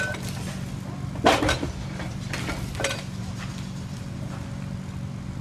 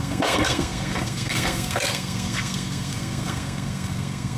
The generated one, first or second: second